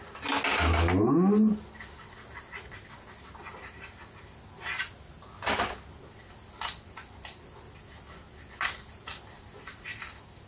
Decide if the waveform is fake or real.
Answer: real